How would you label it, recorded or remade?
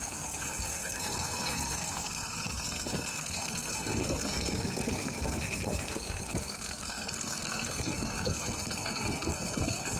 remade